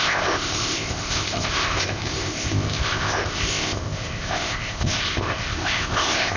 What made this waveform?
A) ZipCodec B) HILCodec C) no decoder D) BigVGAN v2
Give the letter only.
A